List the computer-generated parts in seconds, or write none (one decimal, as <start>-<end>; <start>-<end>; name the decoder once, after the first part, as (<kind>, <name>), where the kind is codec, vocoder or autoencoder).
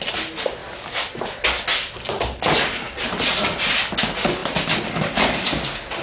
none